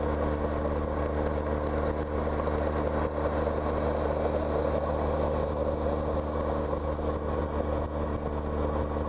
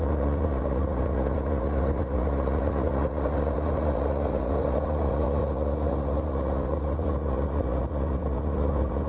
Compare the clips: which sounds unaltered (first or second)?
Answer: first